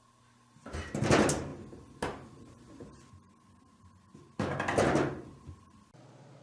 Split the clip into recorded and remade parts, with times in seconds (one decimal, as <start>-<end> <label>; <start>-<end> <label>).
0.0-6.4 recorded